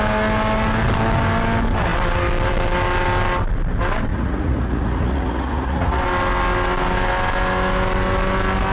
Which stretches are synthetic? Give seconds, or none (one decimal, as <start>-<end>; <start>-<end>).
4.1-6.0